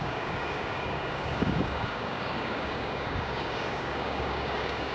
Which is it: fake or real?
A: fake